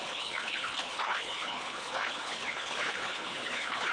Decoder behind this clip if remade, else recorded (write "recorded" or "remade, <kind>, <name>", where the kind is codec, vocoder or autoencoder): remade, codec, HILCodec